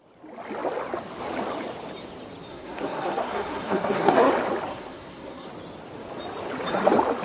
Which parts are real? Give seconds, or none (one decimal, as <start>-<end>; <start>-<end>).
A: 0.0-2.5; 4.3-4.7; 5.5-7.2